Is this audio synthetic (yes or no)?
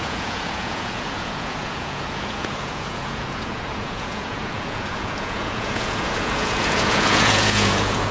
yes